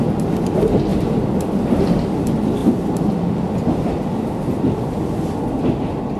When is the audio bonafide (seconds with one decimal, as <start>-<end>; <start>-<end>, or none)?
0.0-0.9; 2.2-2.6; 5.5-6.2